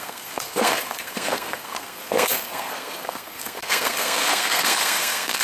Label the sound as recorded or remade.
remade